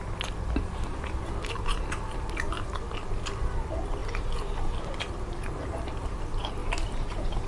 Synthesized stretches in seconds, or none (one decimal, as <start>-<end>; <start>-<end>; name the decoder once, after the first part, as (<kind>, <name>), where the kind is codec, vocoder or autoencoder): 6.6-7.5 (vocoder, BigVGAN v2)